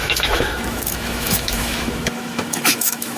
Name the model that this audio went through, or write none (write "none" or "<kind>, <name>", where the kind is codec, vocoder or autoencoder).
autoencoder, DAC-VAE